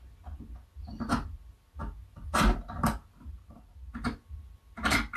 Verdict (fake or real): real